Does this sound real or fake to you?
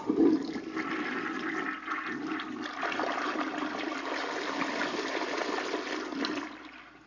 fake